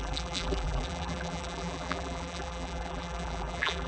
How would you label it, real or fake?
fake